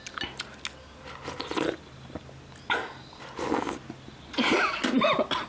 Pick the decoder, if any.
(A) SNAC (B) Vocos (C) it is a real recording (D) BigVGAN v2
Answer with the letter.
C